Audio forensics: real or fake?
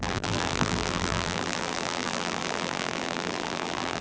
fake